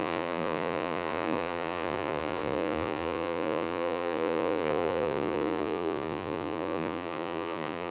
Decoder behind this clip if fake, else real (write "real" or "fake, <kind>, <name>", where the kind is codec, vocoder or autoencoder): fake, vocoder, Vocos